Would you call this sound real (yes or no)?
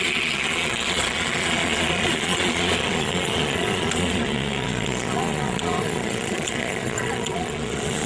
no